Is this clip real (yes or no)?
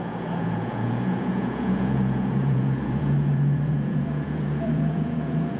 no